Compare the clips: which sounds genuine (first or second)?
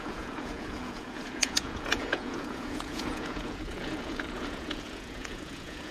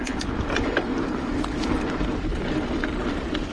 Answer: second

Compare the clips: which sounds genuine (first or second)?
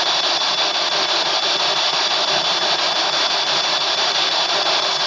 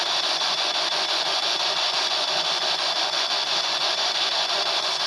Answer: first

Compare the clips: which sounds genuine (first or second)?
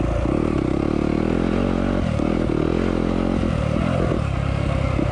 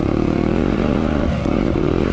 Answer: first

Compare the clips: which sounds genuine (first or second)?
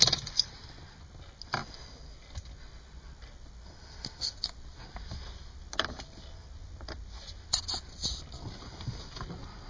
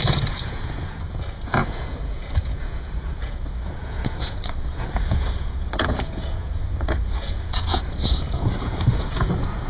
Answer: first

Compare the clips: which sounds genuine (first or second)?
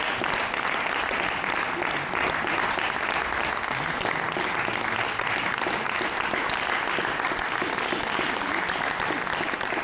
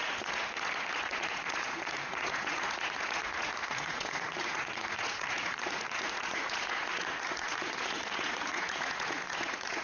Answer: first